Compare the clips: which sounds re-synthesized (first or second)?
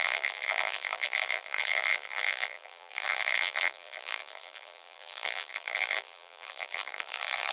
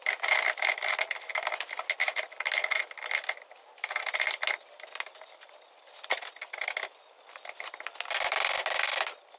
first